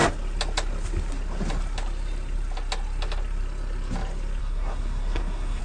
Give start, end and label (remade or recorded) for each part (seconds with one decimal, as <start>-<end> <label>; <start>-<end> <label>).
0.0-4.4 recorded; 4.4-5.6 remade